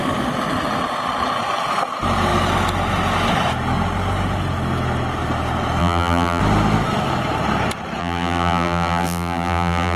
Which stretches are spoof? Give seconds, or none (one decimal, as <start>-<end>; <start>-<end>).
5.8-6.4; 8.0-10.0